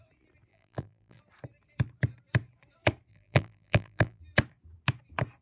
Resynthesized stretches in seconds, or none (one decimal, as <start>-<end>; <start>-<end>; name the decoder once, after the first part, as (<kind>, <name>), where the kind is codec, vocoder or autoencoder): 0.5-1.2 (vocoder, BigVGAN v2); 3.1-4.2

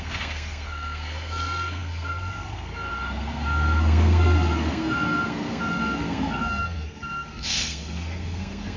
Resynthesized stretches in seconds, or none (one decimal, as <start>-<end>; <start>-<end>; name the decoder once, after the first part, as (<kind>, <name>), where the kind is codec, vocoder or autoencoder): 0.0-8.8 (codec, SNAC)

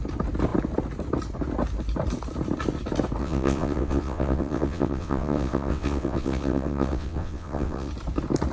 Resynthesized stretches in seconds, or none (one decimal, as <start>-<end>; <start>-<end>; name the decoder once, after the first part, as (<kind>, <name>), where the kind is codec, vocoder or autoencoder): 3.2-7.9 (vocoder, WaveNeXt)

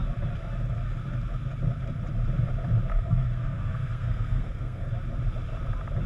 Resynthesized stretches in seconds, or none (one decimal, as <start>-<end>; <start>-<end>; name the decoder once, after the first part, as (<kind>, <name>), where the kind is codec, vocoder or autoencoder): 2.9-4.9 (codec, SNAC)

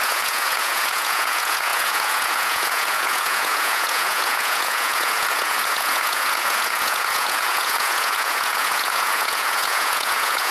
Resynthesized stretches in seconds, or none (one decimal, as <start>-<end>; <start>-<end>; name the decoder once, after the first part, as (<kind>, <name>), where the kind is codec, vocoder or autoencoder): 0.0-10.5 (vocoder, Vocos)